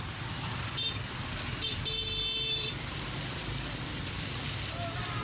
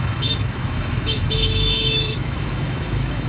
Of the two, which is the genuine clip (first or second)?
first